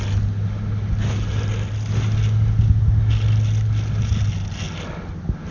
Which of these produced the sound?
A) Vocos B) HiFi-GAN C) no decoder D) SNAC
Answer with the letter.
C